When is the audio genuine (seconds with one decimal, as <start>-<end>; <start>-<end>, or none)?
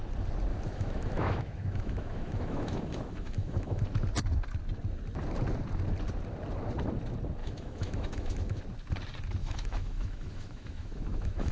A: 0.0-0.5; 3.8-7.4; 8.6-9.4